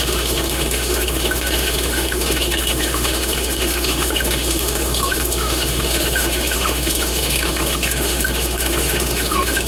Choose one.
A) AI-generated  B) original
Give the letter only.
A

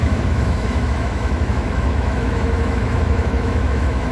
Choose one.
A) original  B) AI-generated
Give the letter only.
B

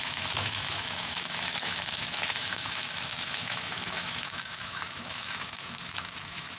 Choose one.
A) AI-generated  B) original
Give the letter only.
A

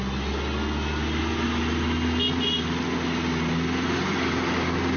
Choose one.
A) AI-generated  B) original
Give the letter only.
B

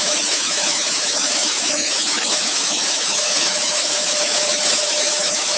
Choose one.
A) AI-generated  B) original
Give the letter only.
A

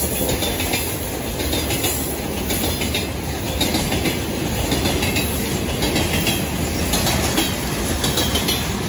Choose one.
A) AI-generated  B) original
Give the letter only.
B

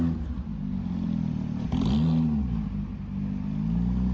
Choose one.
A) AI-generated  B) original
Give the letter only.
B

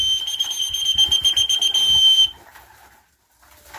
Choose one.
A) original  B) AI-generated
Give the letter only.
A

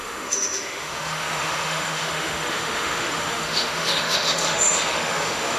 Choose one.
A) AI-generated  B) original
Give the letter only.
A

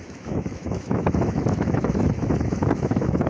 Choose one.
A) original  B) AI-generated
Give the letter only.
B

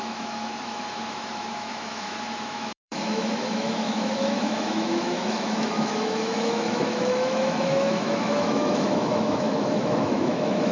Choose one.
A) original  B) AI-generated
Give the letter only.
B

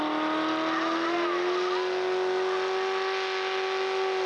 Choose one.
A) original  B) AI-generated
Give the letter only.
A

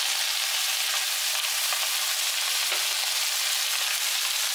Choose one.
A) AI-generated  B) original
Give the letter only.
B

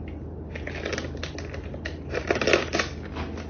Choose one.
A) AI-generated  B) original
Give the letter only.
B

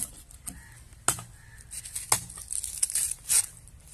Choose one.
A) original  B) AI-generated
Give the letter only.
A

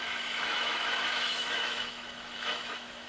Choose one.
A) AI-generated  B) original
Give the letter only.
A